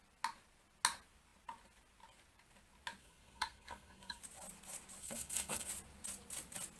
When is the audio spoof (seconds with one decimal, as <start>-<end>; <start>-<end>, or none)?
3.0-4.2; 5.0-5.7